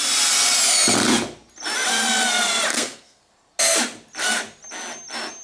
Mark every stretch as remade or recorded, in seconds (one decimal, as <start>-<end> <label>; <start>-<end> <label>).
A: 0.0-2.7 recorded; 2.7-3.3 remade; 3.3-5.4 recorded